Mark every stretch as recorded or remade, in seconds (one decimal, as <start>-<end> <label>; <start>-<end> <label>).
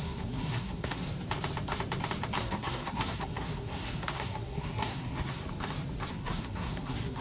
0.0-1.0 remade; 1.0-2.4 recorded; 2.4-5.4 remade; 5.4-6.1 recorded; 6.1-7.2 remade